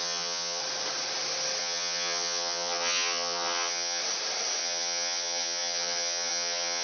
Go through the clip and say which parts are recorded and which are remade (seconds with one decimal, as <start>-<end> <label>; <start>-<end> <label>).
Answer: 0.0-0.6 remade; 0.6-1.6 recorded; 1.6-4.0 remade; 4.0-4.6 recorded; 4.6-6.8 remade